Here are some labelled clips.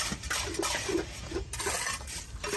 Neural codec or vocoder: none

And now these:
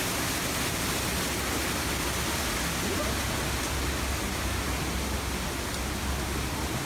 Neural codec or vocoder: none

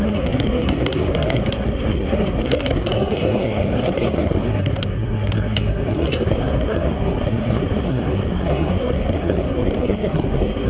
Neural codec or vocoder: codec, SNAC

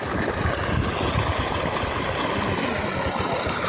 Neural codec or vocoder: none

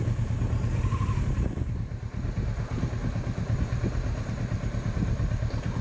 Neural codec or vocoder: none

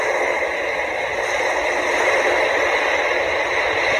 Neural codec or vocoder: none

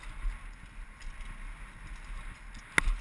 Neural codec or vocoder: none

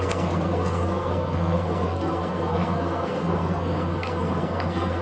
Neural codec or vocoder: codec, SNAC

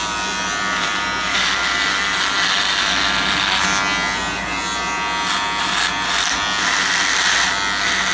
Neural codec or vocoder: none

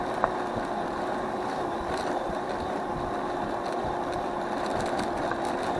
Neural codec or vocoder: none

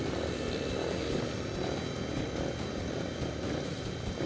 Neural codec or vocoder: none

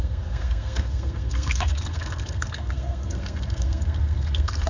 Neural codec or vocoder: codec, SNAC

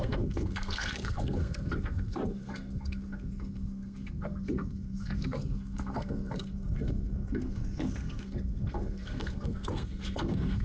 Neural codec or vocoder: codec, SNAC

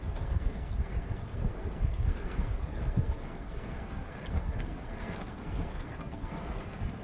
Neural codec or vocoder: codec, SNAC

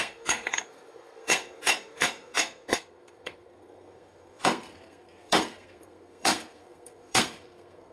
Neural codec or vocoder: codec, SNAC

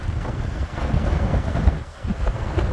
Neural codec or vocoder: codec, SNAC